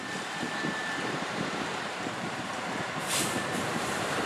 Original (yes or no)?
no